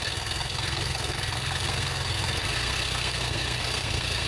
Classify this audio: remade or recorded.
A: remade